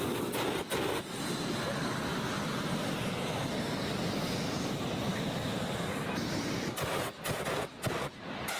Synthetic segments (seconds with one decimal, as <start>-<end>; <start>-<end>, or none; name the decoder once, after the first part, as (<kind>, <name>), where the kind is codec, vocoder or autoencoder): 2.1-3.0 (vocoder, BigVGAN v2); 5.1-8.6